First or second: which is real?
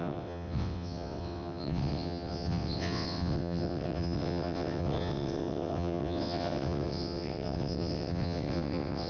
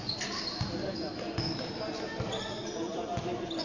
second